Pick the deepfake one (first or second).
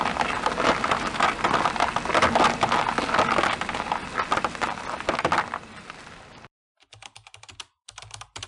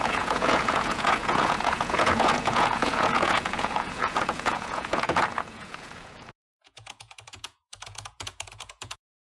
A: second